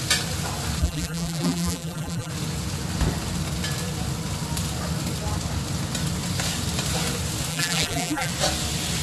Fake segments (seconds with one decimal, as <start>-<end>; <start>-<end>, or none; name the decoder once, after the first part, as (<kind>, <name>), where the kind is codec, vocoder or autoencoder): 0.8-2.3 (vocoder, BigVGAN v2); 7.5-8.3